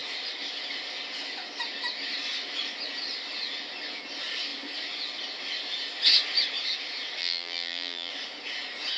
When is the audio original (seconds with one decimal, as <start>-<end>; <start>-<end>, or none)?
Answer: 0.0-7.2; 8.1-9.0